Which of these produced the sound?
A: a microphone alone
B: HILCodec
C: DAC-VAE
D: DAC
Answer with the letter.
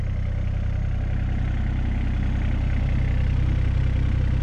A